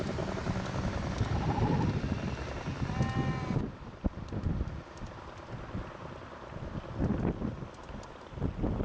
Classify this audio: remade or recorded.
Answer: recorded